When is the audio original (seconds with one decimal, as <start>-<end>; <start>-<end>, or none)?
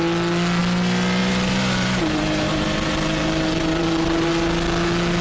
0.0-1.2; 4.3-5.2